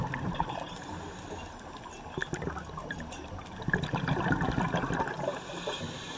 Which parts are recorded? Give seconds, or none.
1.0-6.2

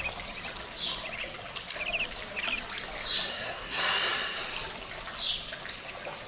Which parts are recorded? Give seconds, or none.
0.0-3.3; 3.8-6.3

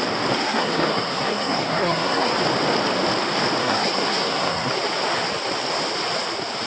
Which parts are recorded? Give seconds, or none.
0.0-0.4; 2.3-3.6; 4.7-6.7

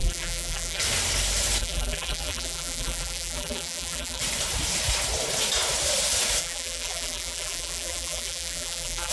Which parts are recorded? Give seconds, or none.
0.8-1.6; 4.2-6.4

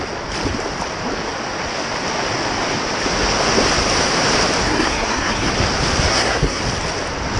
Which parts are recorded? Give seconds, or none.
0.0-4.6; 5.5-6.1; 6.6-7.4